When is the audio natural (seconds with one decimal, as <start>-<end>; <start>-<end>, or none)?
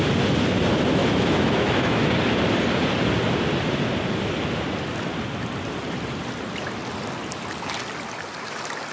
0.0-1.0; 2.1-8.9